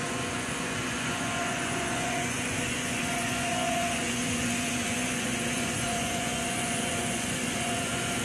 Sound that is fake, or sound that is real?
fake